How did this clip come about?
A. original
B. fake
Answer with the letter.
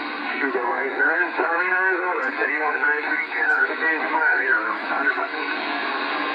B